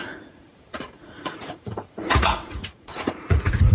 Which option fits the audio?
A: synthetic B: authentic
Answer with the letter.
A